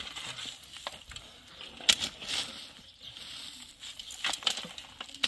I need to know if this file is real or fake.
real